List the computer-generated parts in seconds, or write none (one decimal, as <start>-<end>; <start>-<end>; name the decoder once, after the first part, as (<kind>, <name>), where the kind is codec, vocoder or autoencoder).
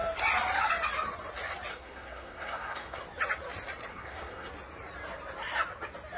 1.7-3.0 (codec, SNAC); 3.9-4.5